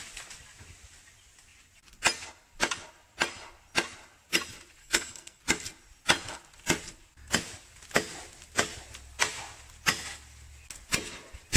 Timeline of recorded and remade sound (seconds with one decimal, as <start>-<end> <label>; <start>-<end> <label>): 0.0-4.8 recorded; 4.8-5.4 remade; 5.4-11.6 recorded